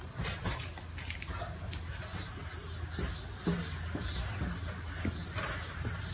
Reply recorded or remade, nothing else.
recorded